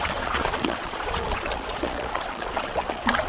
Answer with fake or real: fake